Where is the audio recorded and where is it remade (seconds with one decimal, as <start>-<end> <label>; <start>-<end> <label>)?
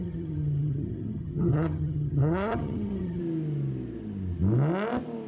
0.0-3.2 remade; 3.2-5.3 recorded